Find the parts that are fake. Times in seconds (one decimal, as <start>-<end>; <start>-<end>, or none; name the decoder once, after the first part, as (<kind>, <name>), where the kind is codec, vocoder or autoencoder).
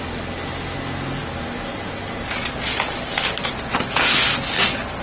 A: none